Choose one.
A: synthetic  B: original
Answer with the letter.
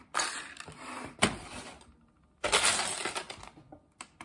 B